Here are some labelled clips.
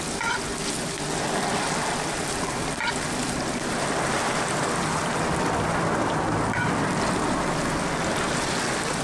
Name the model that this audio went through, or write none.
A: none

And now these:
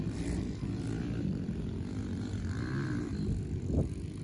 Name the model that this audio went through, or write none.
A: none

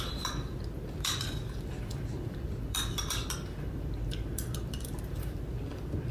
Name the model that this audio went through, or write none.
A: vocoder, BigVGAN v2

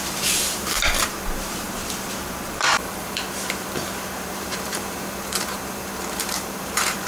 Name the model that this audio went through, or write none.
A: vocoder, BigVGAN v2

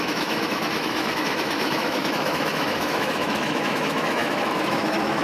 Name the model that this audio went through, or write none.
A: autoencoder, DAC-VAE